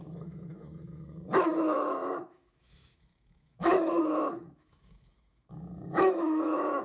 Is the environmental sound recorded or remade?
remade